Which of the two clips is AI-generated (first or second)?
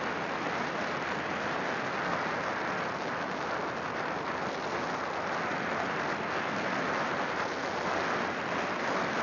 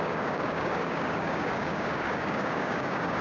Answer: second